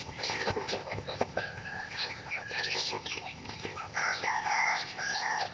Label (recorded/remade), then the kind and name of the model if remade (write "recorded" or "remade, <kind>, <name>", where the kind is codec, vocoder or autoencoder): remade, codec, ZipCodec